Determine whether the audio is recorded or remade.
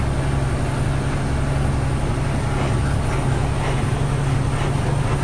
recorded